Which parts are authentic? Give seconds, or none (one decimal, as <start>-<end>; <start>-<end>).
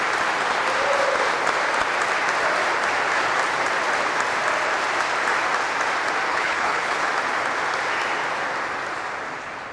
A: 0.0-6.3; 7.1-9.7